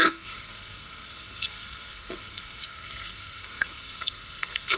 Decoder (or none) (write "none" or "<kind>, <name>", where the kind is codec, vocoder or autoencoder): codec, SNAC